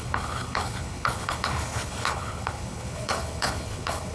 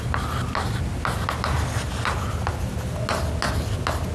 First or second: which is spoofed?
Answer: first